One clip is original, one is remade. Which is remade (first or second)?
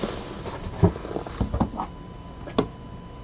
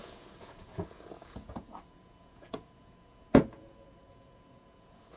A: second